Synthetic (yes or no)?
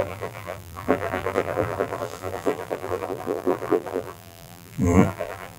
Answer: yes